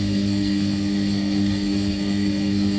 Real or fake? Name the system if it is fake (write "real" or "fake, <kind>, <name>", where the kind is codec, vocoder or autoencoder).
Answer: fake, codec, SNAC